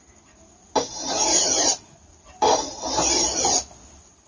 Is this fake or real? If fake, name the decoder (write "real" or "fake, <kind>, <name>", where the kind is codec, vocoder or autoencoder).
real